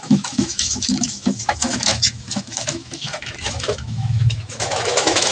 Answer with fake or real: fake